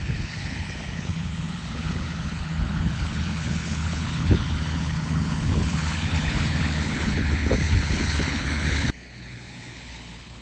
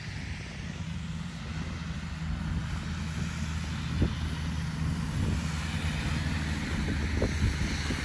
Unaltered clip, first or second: second